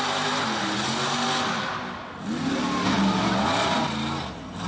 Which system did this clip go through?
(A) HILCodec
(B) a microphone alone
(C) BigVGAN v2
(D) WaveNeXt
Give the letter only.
B